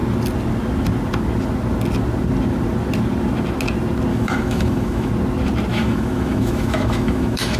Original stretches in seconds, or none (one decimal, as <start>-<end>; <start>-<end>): 0.0-4.1; 5.1-5.7